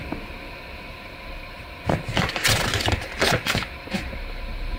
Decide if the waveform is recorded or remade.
recorded